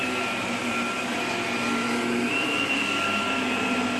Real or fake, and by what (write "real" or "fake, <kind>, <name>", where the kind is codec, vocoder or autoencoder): real